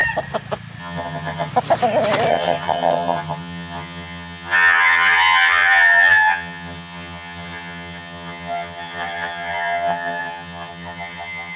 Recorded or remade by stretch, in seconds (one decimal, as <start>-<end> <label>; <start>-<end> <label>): 0.0-0.8 recorded; 0.8-1.5 remade; 1.5-2.3 recorded; 2.3-11.6 remade